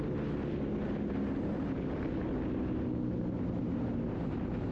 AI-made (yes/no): no